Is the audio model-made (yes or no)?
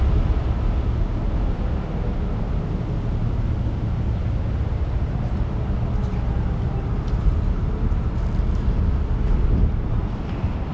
no